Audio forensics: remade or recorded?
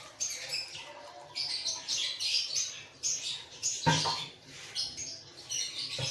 recorded